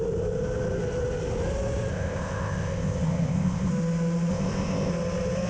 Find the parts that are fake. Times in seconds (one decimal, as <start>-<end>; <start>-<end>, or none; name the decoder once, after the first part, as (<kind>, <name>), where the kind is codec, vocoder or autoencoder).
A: 1.9-3.7 (codec, ZipCodec); 4.3-4.9